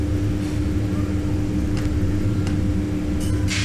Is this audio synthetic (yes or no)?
no